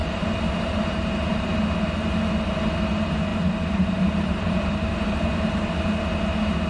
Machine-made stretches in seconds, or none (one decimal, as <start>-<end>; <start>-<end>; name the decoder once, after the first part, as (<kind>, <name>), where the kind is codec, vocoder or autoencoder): 0.0-1.5 (vocoder, BigVGAN v2); 3.3-5.7